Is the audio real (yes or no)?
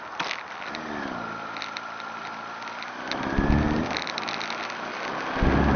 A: yes